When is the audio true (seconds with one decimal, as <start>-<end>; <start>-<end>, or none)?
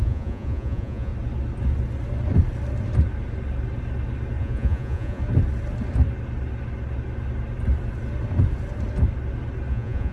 1.1-4.4; 5.2-9.7